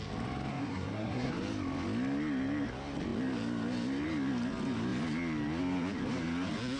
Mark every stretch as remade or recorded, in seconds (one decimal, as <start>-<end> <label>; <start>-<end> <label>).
0.0-0.5 recorded; 0.5-1.3 remade; 1.3-6.8 recorded